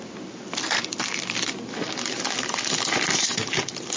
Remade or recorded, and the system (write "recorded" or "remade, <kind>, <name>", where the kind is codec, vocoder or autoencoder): recorded